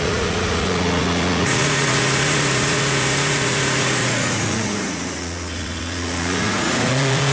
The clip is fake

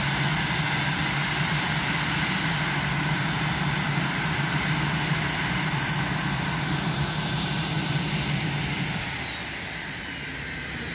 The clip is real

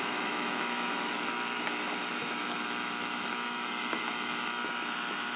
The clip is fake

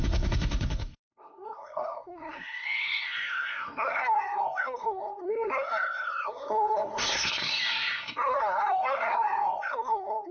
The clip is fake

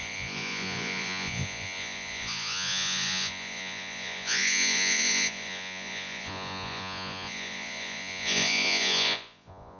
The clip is fake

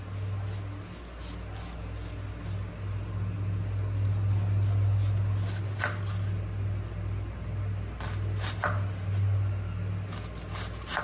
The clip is real